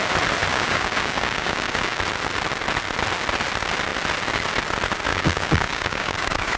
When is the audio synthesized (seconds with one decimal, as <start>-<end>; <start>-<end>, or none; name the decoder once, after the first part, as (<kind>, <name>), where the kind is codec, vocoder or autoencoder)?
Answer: 0.5-2.0 (codec, DAC); 5.1-6.6